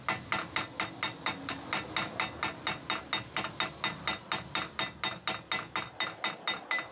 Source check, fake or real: real